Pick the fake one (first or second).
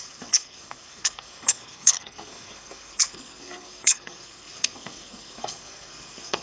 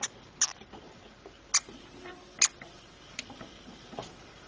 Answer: first